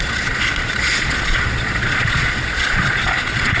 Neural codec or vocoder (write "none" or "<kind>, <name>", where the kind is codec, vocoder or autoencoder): vocoder, Vocos